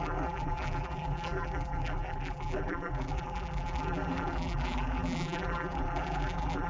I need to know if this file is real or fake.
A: fake